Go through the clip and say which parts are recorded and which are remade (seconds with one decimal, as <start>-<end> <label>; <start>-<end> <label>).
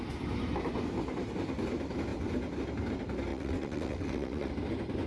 0.0-3.3 recorded; 3.3-4.5 remade; 4.5-5.1 recorded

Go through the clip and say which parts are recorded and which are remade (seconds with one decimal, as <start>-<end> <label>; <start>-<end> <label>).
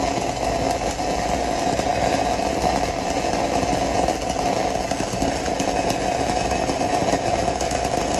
0.0-8.2 recorded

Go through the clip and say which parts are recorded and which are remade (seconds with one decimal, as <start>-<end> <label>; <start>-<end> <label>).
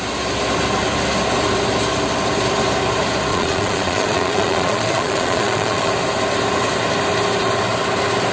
0.0-3.3 recorded; 3.3-5.9 remade; 5.9-8.3 recorded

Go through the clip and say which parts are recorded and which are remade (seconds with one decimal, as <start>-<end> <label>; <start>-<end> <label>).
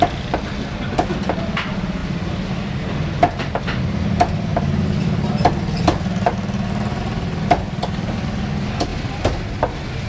0.0-10.1 recorded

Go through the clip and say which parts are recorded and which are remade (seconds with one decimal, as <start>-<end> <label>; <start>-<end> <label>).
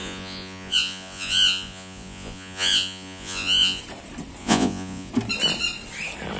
0.0-3.8 remade; 3.8-4.4 recorded; 4.4-5.1 remade; 5.1-6.4 recorded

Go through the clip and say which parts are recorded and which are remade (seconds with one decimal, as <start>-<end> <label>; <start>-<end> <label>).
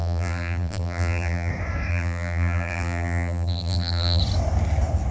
0.0-1.5 remade; 1.5-1.9 recorded; 1.9-4.2 remade; 4.2-5.1 recorded